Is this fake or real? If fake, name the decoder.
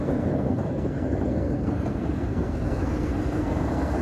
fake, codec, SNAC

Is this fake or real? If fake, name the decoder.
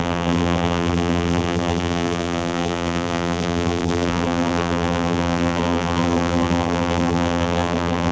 fake, vocoder, BigVGAN v2